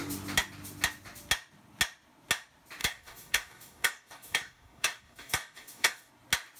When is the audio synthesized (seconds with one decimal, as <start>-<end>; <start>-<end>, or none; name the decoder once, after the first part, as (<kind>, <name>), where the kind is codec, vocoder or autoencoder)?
2.8-6.1 (codec, DAC)